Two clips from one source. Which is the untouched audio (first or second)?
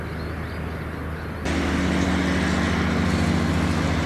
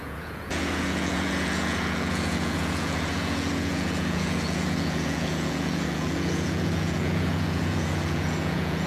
first